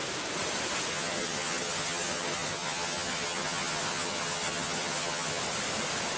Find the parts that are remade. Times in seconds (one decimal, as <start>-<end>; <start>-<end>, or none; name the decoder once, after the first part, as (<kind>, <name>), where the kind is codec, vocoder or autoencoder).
0.9-5.4 (vocoder, HiFi-GAN)